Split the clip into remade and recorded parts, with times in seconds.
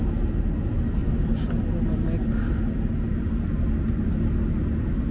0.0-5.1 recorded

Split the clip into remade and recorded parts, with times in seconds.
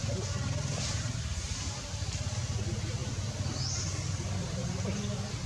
0.0-5.5 recorded